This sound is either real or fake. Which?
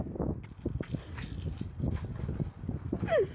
real